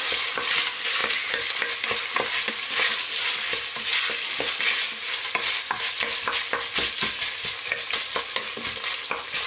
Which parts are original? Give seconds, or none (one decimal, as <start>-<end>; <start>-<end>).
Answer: 1.0-2.5; 3.9-8.0

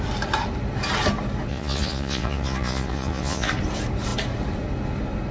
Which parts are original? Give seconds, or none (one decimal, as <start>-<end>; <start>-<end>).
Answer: 0.0-1.5; 3.5-5.3

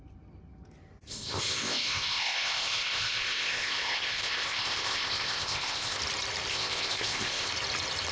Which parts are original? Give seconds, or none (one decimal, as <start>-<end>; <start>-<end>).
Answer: 0.0-1.1; 6.0-6.5; 7.5-8.1

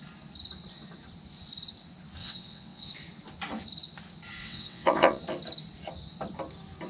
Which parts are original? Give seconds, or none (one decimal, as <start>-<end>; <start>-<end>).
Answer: 0.0-2.2; 2.9-4.4; 5.2-6.9

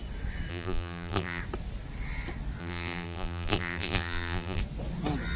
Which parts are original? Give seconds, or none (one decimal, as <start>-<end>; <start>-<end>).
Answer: 0.0-0.5; 1.4-2.6; 4.6-5.4

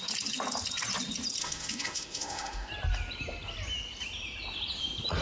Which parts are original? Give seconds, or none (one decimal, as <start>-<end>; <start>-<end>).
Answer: 0.0-1.4; 2.7-5.2